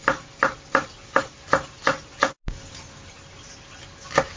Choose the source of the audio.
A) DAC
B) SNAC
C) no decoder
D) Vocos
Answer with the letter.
C